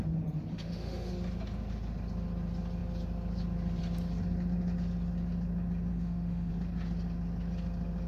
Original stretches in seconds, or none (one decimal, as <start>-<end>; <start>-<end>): 0.0-0.5; 1.1-5.9; 6.5-8.1